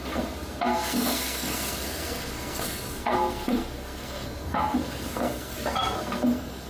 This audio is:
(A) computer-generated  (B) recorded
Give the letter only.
A